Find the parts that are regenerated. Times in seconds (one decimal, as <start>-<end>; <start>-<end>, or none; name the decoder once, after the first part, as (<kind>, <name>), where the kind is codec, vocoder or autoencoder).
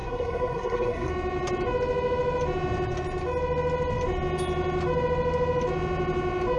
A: 0.0-1.1 (codec, SNAC)